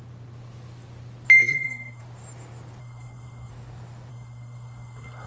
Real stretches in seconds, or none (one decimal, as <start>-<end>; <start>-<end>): 0.0-1.4; 2.0-2.8; 3.5-4.1